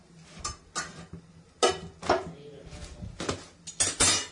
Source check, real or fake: real